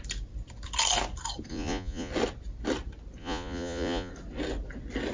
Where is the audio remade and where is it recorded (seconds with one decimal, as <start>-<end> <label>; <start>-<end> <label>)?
0.0-1.5 recorded; 1.5-2.1 remade; 2.1-3.2 recorded; 3.2-4.1 remade; 4.1-5.1 recorded